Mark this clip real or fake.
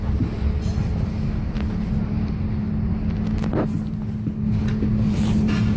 real